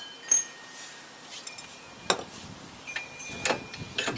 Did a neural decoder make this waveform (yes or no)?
no